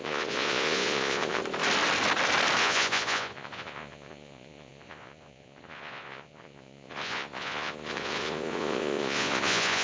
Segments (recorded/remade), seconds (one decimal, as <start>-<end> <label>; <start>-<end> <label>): 0.0-1.4 remade; 1.4-2.6 recorded; 2.6-9.8 remade